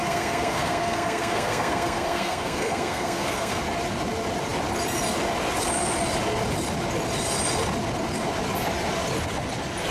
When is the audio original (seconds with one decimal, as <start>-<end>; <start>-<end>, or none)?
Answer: 3.6-9.9